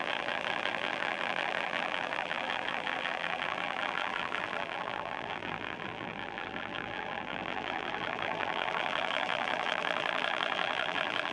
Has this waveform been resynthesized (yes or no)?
yes